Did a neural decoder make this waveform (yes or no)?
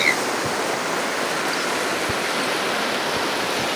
no